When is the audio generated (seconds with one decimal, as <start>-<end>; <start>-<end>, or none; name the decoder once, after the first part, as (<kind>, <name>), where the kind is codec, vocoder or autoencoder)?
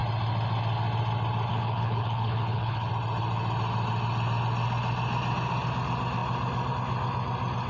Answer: 1.5-2.9 (codec, HILCodec)